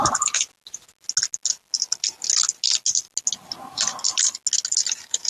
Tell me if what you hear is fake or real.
real